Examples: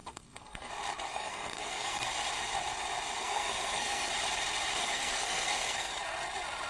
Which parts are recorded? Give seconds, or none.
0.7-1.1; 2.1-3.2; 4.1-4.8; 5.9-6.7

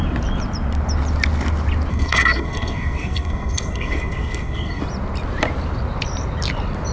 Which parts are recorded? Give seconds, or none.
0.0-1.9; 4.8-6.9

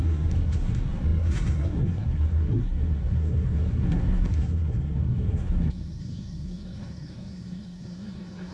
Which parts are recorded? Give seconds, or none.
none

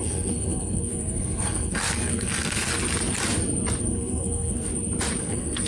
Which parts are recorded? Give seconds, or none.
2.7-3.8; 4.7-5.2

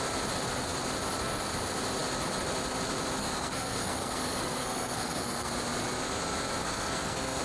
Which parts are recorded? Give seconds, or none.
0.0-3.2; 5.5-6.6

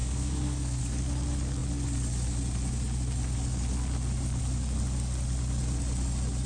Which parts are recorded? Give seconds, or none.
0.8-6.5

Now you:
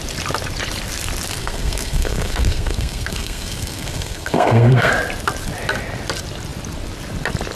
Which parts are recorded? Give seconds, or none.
0.0-1.4; 4.9-7.6

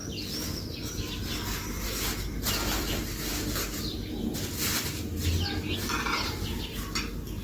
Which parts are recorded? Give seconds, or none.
0.0-7.4